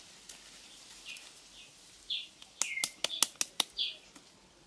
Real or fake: real